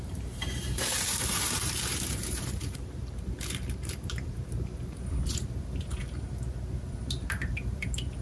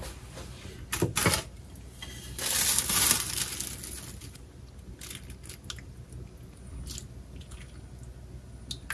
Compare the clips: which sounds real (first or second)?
second